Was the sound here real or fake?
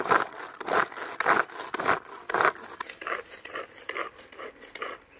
real